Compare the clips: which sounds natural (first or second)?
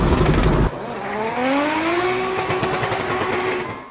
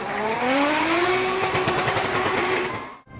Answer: first